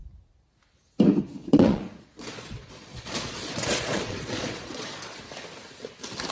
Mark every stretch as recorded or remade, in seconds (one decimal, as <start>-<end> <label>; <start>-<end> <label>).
0.0-1.4 recorded; 1.4-5.2 remade; 5.2-6.3 recorded